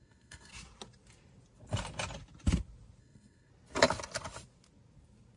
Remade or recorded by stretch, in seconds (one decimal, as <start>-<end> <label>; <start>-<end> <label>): 0.0-0.5 remade; 0.5-3.0 recorded; 3.0-3.5 remade; 3.5-5.4 recorded